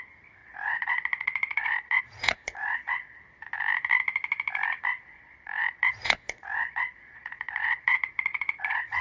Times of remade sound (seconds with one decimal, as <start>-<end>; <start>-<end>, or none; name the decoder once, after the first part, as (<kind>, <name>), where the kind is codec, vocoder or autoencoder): 0.4-3.2 (vocoder, Vocos); 5.1-9.0